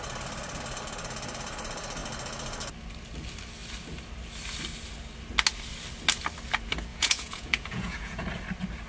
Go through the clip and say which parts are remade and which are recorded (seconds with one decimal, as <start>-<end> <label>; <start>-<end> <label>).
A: 0.0-6.9 recorded; 6.9-8.2 remade; 8.2-8.9 recorded